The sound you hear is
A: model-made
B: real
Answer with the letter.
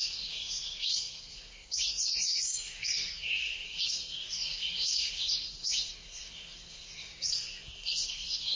A